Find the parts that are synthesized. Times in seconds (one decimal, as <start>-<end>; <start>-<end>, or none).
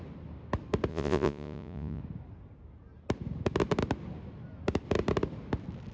0.9-2.0